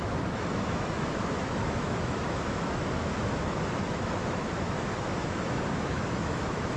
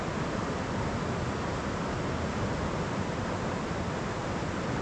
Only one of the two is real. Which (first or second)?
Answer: second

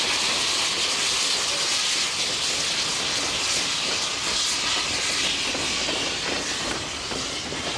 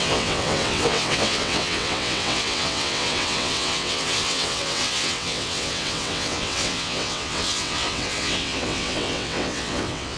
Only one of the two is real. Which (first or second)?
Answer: first